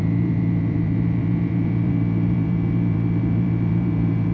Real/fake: fake